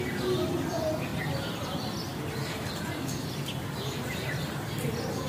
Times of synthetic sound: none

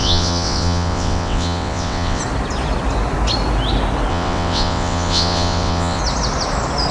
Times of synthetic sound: 0.0-2.2 (vocoder, WaveNeXt); 4.1-6.0